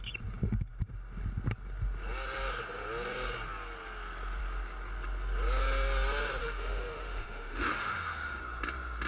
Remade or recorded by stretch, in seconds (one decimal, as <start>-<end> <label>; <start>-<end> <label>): 0.0-6.4 recorded; 6.4-8.4 remade; 8.4-9.1 recorded